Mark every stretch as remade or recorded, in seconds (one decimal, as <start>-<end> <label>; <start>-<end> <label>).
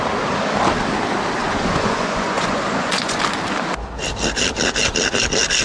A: 0.0-1.4 recorded; 1.4-3.2 remade; 3.2-5.6 recorded